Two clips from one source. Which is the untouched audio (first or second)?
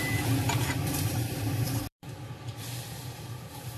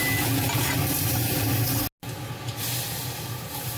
second